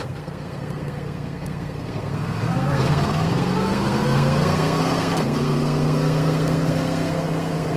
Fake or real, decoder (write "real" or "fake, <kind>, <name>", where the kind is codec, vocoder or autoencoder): fake, codec, SNAC